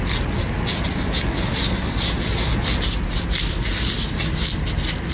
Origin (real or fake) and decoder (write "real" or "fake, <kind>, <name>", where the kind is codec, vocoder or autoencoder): real